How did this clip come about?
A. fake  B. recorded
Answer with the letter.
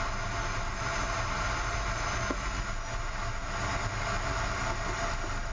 B